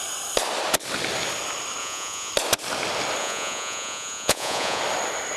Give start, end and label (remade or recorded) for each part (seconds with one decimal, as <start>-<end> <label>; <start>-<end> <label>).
0.0-1.8 recorded; 1.8-2.3 remade; 2.3-3.2 recorded; 3.2-4.8 remade; 4.8-5.4 recorded